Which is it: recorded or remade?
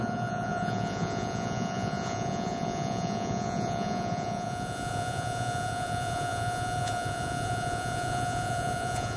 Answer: remade